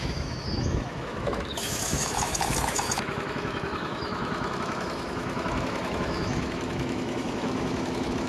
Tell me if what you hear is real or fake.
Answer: fake